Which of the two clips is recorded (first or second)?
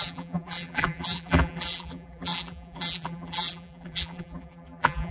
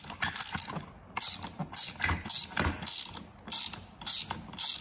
second